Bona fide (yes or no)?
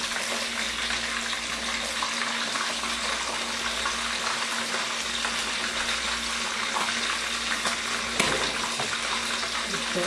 yes